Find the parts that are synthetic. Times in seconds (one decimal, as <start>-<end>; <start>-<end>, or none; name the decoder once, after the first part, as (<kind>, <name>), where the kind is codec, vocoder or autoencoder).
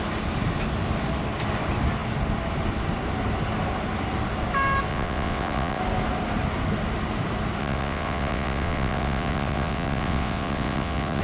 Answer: 4.9-5.8 (vocoder, WaveNeXt); 7.6-11.2